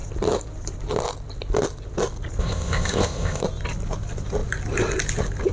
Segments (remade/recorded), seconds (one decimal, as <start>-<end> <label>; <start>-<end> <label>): 0.0-2.4 recorded; 2.4-3.4 remade; 3.4-5.5 recorded

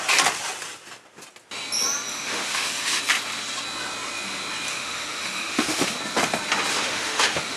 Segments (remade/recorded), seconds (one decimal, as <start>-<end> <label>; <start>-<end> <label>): 0.0-2.1 recorded; 2.1-3.0 remade; 3.0-4.7 recorded; 4.7-6.0 remade; 6.0-6.7 recorded; 6.7-7.6 remade

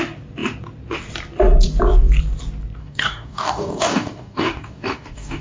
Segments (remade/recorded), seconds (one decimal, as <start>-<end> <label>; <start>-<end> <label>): 0.0-2.8 recorded; 2.8-5.4 remade